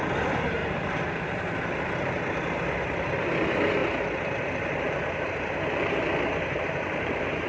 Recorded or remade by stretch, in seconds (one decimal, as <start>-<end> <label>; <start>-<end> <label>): 0.0-0.6 recorded; 0.6-1.9 remade; 1.9-3.8 recorded; 3.8-7.5 remade